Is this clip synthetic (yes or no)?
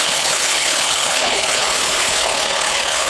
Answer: yes